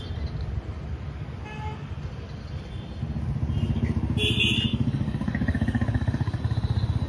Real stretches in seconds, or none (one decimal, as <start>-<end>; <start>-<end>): 0.0-4.7; 6.4-7.1